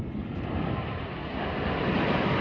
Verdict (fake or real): real